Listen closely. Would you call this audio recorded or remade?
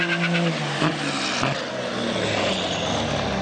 recorded